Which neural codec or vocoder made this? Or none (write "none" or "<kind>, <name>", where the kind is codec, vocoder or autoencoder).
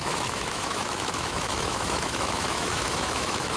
autoencoder, DAC-VAE